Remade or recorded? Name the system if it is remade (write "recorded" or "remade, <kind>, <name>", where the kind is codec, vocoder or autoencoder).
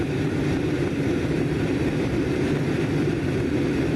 remade, vocoder, BigVGAN v2